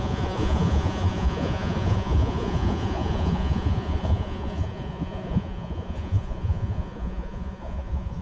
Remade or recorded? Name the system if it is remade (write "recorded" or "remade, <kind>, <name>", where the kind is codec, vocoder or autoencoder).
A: remade, vocoder, Vocos